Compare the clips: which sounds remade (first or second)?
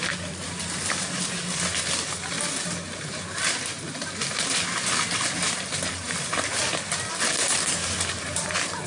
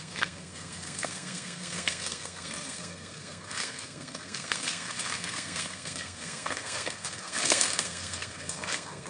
second